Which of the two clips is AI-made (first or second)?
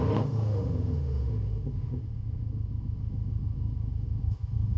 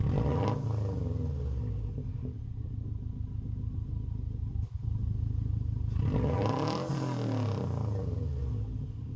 first